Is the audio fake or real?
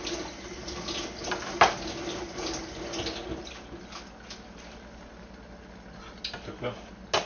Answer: real